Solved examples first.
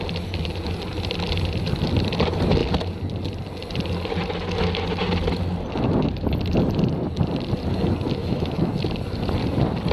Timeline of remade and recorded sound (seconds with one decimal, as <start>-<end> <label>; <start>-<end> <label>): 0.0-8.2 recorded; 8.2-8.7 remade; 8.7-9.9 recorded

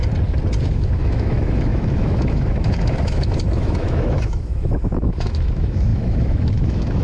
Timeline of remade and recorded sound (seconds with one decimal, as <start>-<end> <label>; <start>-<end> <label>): 0.0-0.6 recorded; 0.6-7.0 remade

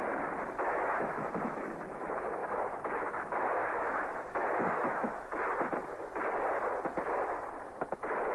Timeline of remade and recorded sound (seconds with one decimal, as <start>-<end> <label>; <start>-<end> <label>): 0.0-0.7 recorded; 0.7-1.7 remade; 1.7-2.4 recorded; 2.4-5.4 remade; 5.4-8.3 recorded